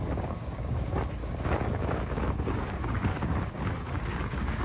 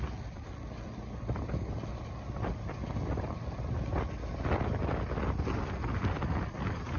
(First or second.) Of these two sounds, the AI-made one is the first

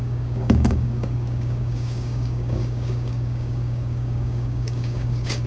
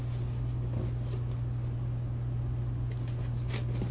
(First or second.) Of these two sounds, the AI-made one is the first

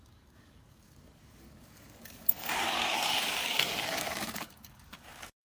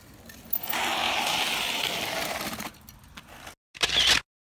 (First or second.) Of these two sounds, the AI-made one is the first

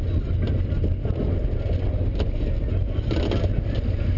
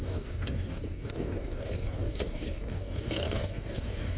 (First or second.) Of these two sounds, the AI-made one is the second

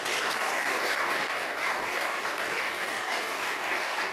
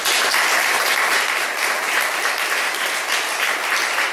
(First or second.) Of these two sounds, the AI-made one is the first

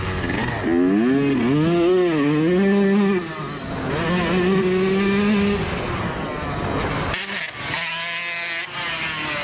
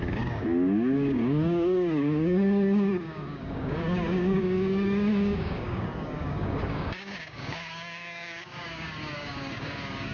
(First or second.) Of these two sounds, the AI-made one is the second